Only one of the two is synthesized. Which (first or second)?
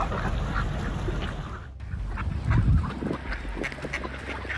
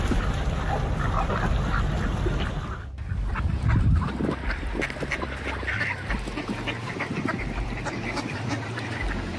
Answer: second